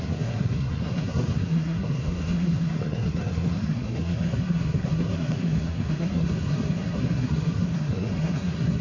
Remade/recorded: remade